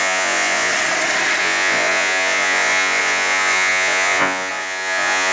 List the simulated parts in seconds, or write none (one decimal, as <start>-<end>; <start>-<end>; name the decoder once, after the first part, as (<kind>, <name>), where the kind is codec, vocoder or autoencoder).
0.0-0.7 (vocoder, Vocos); 1.4-5.3